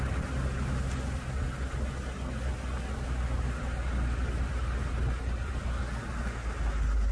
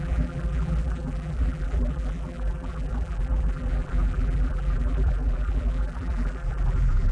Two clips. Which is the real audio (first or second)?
first